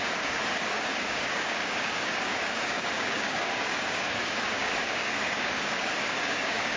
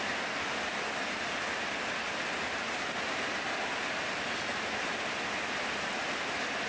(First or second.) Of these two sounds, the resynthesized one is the first